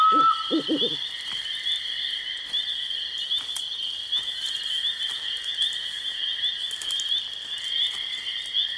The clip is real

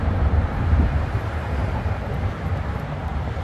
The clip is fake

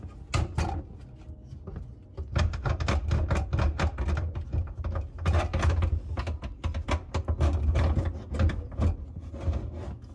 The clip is real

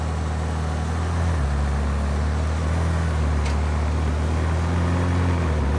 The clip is real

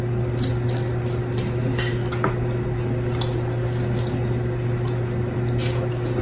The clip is real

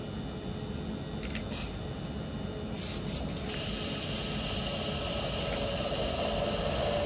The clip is real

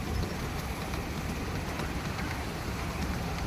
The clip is fake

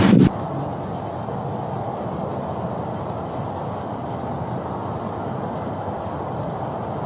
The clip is real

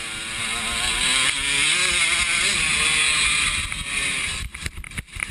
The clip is real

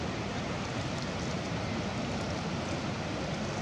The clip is real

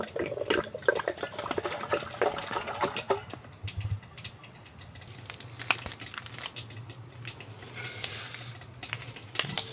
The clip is real